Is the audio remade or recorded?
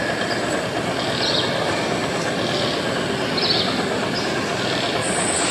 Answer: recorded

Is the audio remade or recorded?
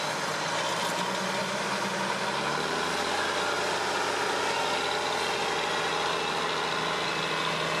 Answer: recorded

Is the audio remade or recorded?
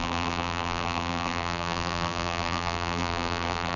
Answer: remade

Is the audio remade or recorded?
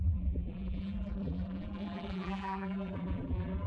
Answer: remade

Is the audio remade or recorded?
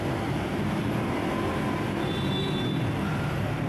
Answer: recorded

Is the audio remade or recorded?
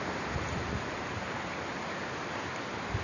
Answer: remade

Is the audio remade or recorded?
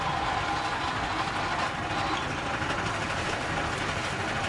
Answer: recorded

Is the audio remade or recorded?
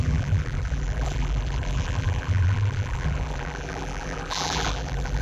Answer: remade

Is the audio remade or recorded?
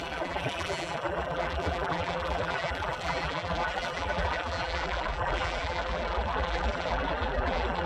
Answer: remade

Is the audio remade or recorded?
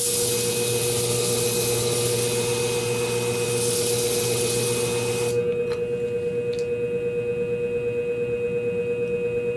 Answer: recorded